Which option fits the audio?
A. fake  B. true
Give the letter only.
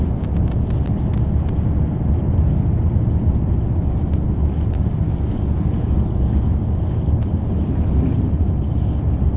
B